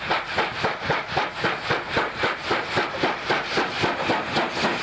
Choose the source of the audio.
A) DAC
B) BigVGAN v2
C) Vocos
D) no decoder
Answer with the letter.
D